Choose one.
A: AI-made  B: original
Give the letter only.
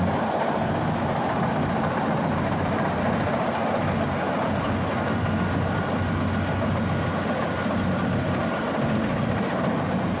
B